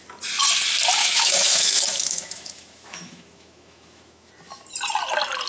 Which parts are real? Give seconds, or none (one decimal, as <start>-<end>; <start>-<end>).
0.0-1.0; 4.3-5.5